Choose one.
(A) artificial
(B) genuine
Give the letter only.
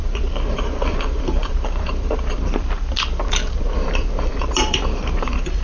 A